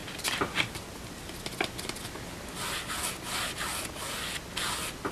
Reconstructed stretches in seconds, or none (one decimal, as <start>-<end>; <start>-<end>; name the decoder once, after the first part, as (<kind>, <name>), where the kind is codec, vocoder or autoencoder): none